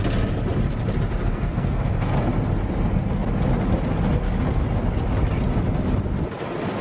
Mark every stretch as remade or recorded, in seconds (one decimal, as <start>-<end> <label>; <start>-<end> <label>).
0.0-1.3 recorded; 1.3-1.8 remade; 1.8-6.8 recorded